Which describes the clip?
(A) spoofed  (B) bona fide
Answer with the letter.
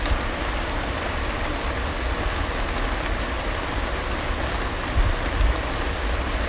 B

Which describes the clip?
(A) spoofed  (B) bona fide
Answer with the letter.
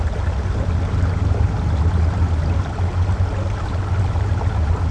B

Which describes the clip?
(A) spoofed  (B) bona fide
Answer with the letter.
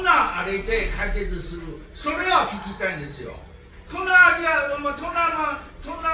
B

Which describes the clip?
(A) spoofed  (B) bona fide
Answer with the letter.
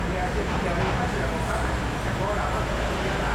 B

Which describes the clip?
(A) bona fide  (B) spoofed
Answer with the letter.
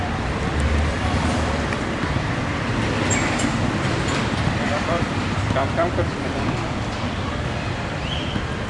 B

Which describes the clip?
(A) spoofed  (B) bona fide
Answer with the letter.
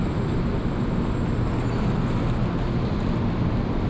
B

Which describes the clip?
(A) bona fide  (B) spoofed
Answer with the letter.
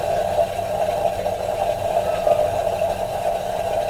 A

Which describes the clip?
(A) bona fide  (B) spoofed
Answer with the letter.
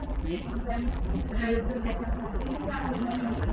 B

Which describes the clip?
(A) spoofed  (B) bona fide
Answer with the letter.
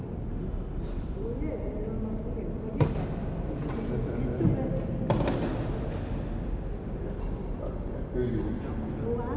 B